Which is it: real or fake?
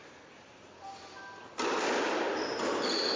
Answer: real